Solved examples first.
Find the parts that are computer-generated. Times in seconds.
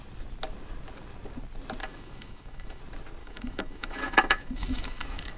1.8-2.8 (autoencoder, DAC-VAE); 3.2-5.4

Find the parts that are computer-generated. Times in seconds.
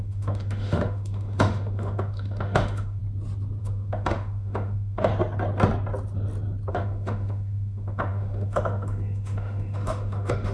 0.0-3.0 (autoencoder, DAC-VAE); 3.6-5.1; 6.7-10.5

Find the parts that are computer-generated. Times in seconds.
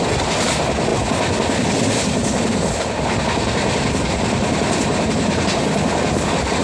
none